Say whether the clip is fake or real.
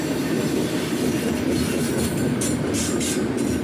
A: real